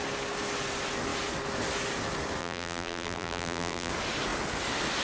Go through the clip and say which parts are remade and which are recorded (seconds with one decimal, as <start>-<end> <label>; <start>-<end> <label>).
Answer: 0.0-2.4 recorded; 2.4-3.9 remade; 3.9-5.0 recorded